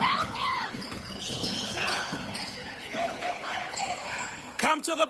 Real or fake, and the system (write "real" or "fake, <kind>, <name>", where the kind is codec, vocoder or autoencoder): fake, codec, HILCodec